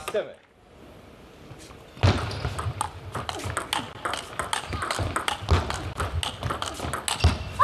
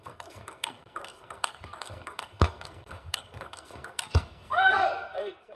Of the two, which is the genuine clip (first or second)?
first